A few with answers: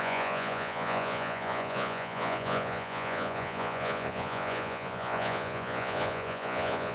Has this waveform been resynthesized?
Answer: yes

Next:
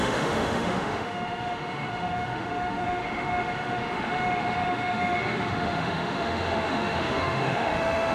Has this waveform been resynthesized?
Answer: yes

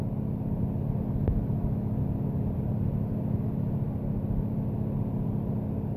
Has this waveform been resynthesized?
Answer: no